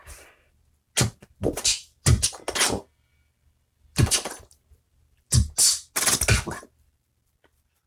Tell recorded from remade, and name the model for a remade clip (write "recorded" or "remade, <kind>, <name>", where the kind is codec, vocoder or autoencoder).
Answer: recorded